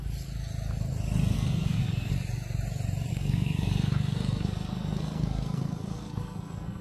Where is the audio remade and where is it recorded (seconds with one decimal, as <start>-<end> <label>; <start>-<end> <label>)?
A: 0.0-1.3 recorded; 1.3-2.1 remade; 2.1-3.1 recorded; 3.1-6.8 remade